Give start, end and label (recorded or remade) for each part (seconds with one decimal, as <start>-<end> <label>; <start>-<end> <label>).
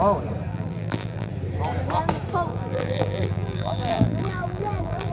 0.0-0.5 recorded; 0.5-1.3 remade; 1.3-2.5 recorded; 2.5-5.1 remade